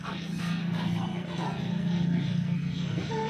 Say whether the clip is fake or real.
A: fake